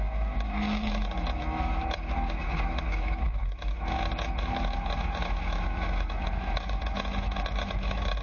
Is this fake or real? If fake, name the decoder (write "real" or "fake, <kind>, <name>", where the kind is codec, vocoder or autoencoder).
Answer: fake, autoencoder, DAC-VAE